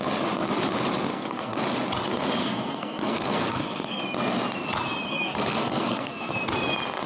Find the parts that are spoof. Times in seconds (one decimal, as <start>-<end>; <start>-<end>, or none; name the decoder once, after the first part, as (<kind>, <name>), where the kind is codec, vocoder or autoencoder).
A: 1.1-1.6 (codec, SNAC); 2.4-4.0; 5.1-6.3